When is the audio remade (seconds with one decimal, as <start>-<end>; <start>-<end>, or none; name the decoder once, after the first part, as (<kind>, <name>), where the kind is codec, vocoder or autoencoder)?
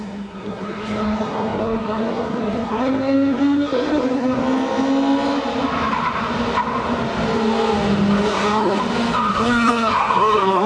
0.0-4.4 (codec, SNAC); 8.3-8.8; 9.3-10.7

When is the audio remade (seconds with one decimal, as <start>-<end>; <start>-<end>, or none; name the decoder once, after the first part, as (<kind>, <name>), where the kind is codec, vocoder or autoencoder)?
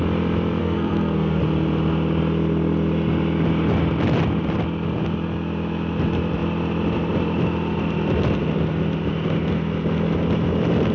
0.6-1.4 (codec, SNAC)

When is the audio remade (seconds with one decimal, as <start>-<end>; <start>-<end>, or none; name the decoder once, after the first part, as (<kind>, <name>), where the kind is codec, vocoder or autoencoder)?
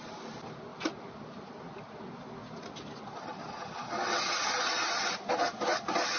none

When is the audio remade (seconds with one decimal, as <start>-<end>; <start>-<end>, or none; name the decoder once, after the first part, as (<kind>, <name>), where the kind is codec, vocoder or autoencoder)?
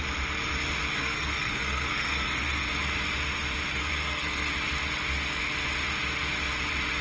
1.0-2.7 (codec, SNAC); 3.7-4.5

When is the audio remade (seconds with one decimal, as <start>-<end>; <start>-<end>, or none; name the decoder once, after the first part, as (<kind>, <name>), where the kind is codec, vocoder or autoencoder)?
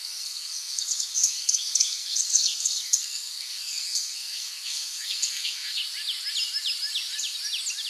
0.0-5.8 (codec, SNAC)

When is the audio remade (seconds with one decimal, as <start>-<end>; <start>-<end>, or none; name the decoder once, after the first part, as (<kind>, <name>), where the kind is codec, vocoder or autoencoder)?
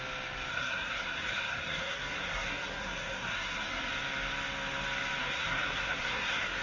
0.5-3.9 (codec, SNAC); 5.2-6.6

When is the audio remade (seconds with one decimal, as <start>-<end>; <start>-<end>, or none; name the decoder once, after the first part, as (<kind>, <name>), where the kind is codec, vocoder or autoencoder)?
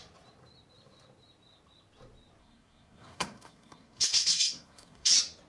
2.4-5.1 (codec, SNAC)